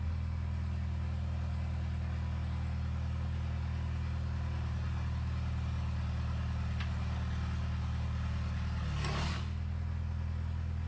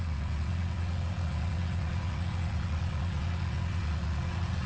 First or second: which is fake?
second